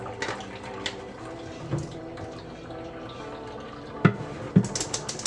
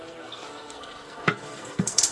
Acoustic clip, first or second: first